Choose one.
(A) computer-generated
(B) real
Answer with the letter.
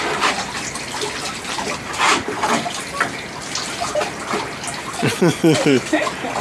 B